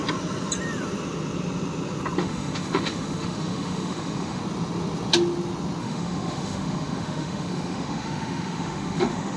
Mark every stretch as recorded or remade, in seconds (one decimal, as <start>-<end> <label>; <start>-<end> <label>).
0.0-2.2 recorded; 2.2-4.4 remade; 4.4-5.8 recorded; 5.8-9.4 remade